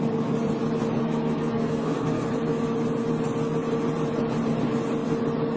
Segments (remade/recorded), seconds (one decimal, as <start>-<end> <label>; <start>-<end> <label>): 0.0-1.0 recorded; 1.0-2.3 remade; 2.3-5.6 recorded